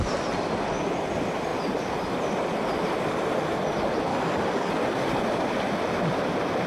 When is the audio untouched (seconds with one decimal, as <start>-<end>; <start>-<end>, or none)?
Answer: 0.0-4.1; 4.7-6.7